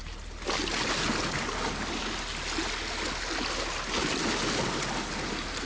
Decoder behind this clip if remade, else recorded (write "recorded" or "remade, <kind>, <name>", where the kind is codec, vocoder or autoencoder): recorded